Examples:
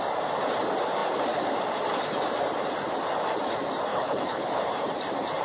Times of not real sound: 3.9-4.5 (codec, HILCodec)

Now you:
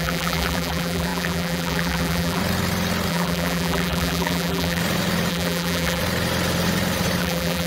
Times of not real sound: 0.0-2.4 (vocoder, BigVGAN v2); 3.1-4.8; 5.3-6.0; 7.2-7.7

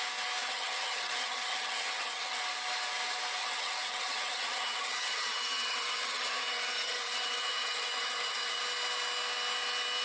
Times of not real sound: 0.4-2.4 (vocoder, HiFi-GAN); 3.4-8.6

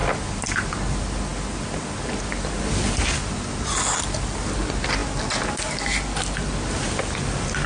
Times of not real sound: none

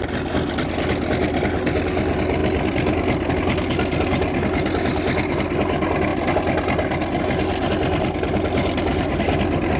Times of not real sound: none